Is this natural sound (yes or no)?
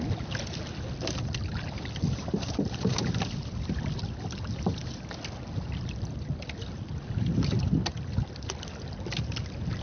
yes